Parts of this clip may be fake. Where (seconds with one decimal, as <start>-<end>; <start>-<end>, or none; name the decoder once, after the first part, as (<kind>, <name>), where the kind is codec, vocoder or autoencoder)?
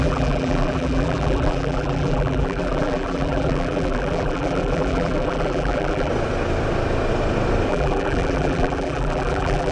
0.0-6.1 (vocoder, BigVGAN v2); 7.7-9.7